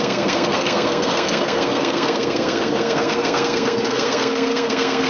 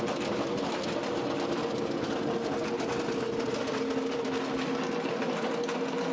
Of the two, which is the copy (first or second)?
first